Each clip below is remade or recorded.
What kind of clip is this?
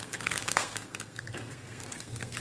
remade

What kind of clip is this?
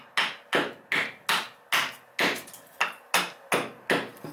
recorded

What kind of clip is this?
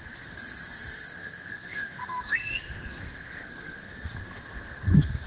remade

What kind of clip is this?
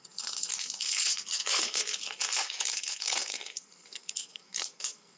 remade